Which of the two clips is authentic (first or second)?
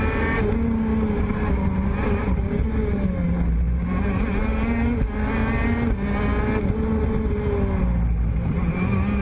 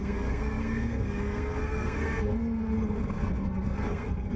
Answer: first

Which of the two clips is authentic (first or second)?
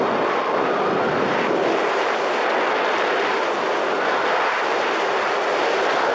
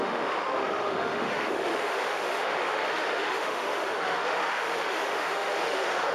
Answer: first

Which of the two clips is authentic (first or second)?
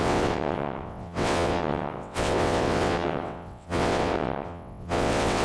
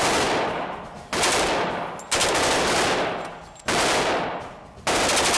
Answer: second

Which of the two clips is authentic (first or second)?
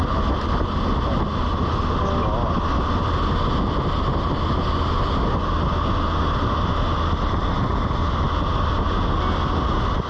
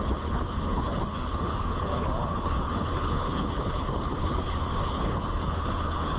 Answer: first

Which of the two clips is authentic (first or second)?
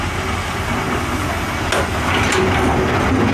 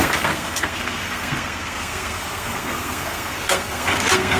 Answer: first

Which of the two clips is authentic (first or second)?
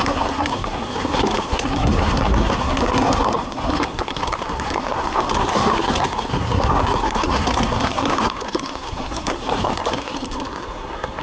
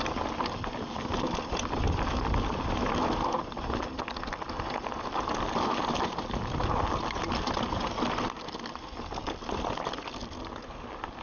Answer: second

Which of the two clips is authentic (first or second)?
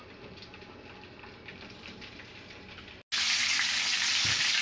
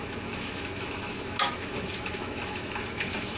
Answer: first